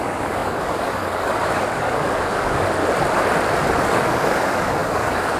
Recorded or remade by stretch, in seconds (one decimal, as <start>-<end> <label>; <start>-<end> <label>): 0.0-2.8 remade; 2.8-3.8 recorded; 3.8-5.4 remade

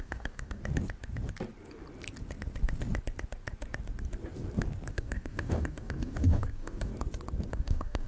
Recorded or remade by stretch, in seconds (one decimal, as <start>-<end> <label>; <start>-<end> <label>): 0.0-0.6 remade; 0.6-4.9 recorded; 4.9-6.9 remade; 6.9-7.5 recorded; 7.5-8.1 remade

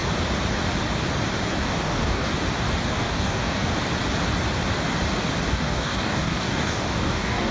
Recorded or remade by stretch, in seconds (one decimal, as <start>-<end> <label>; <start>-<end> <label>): 0.0-1.6 recorded; 1.6-2.3 remade; 2.3-2.9 recorded; 2.9-3.7 remade; 3.7-5.5 recorded; 5.5-7.5 remade

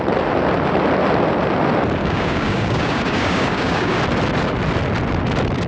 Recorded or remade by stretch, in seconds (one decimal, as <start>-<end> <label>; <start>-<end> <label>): 0.0-2.0 recorded; 2.0-4.0 remade; 4.0-5.7 recorded